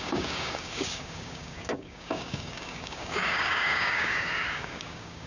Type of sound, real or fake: fake